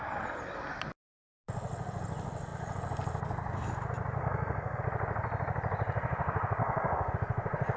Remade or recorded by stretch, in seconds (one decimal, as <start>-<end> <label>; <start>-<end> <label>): 0.0-4.2 recorded; 4.2-4.8 remade; 4.8-6.6 recorded; 6.6-7.1 remade; 7.1-7.8 recorded